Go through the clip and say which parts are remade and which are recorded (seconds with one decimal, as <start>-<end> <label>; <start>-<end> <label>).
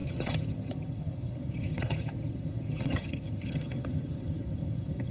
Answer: 0.0-5.1 remade